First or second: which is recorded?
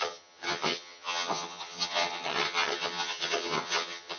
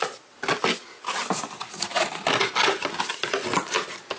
second